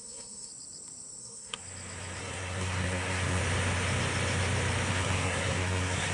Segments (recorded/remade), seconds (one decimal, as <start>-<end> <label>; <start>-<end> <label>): 0.0-0.5 remade; 0.5-1.2 recorded; 1.2-1.6 remade; 1.6-2.2 recorded; 2.2-3.4 remade; 3.4-4.9 recorded; 4.9-6.1 remade

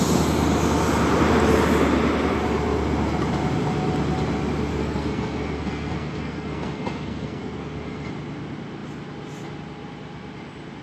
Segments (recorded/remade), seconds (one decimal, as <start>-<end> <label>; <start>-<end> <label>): 0.0-4.8 recorded; 4.8-8.1 remade; 8.1-10.8 recorded

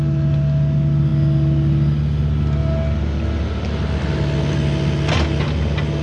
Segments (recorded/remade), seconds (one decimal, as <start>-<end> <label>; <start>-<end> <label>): 0.0-6.0 recorded

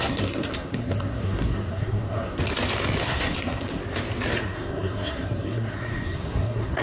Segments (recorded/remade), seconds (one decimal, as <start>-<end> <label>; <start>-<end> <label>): 0.0-2.4 remade; 2.4-3.0 recorded; 3.0-3.8 remade; 3.8-4.4 recorded; 4.4-6.8 remade

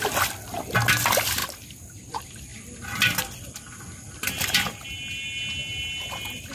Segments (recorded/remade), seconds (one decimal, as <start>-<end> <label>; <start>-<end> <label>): 0.0-6.5 recorded

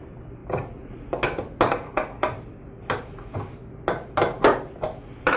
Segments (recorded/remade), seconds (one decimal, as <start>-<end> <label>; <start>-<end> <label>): 0.0-5.4 recorded

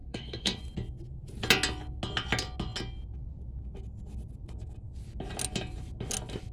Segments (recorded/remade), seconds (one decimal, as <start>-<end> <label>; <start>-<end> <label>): 0.0-0.6 remade; 0.6-6.5 recorded

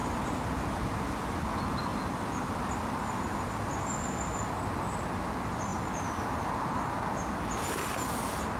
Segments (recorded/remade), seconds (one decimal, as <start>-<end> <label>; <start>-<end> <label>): 0.0-8.6 recorded